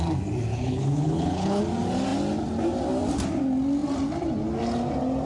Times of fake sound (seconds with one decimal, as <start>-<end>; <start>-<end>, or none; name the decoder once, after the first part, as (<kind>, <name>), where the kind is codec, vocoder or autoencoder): 0.5-1.6 (codec, HILCodec)